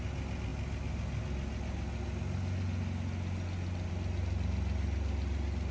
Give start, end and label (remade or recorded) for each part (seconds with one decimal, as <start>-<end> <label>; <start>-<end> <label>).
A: 0.0-5.7 recorded